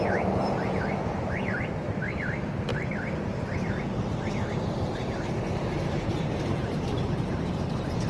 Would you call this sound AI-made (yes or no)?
no